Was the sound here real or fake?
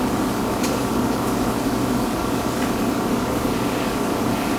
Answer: fake